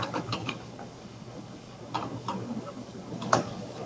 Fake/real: fake